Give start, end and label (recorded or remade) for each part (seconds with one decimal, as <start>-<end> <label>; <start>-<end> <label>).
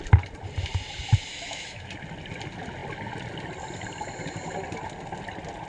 0.0-1.3 recorded; 1.3-1.9 remade; 1.9-5.7 recorded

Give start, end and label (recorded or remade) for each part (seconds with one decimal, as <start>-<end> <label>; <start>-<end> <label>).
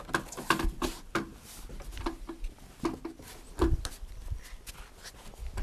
0.0-5.6 recorded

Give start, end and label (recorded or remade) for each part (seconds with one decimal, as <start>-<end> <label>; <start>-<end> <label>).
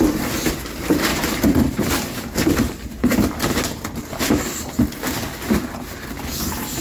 0.0-6.8 recorded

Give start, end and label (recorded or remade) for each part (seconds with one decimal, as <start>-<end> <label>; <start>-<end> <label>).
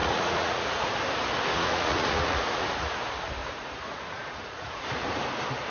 0.0-0.9 remade; 0.9-1.5 recorded; 1.5-2.9 remade; 2.9-3.4 recorded; 3.4-5.2 remade; 5.2-5.7 recorded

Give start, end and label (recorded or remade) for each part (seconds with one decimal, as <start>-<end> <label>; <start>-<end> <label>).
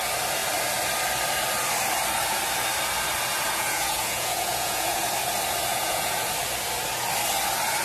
0.0-3.3 recorded; 3.3-5.0 remade; 5.0-5.7 recorded; 5.7-6.3 remade; 6.3-7.8 recorded